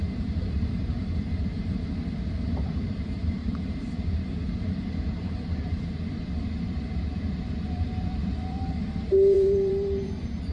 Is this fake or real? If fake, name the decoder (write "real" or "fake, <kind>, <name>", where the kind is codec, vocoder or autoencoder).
fake, vocoder, BigVGAN v2